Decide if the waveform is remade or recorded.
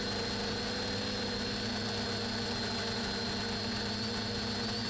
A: recorded